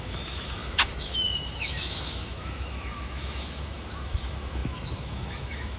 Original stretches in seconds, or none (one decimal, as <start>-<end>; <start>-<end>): none